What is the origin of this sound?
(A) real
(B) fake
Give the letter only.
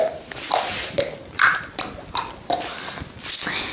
A